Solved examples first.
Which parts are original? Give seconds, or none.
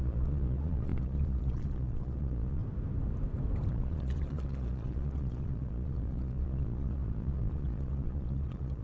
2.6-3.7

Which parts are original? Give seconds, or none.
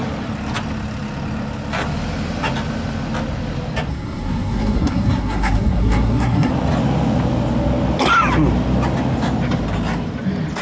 0.0-3.9; 6.5-10.6